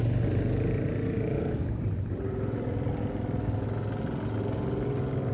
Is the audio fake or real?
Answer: real